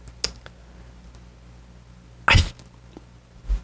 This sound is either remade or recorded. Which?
recorded